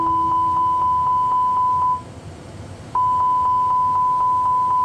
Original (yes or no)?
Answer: yes